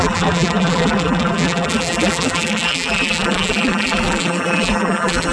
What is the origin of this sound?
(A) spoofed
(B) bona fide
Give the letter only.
A